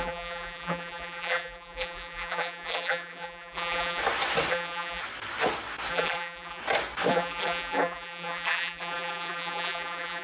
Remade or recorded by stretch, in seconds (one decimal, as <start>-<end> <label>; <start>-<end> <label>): 0.0-4.0 remade; 4.0-4.5 recorded; 4.5-5.0 remade; 5.0-5.9 recorded; 5.9-6.6 remade; 6.6-7.1 recorded; 7.1-10.2 remade